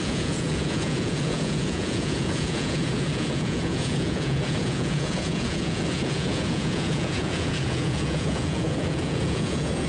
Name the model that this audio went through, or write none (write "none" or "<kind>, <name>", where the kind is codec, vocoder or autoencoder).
vocoder, Vocos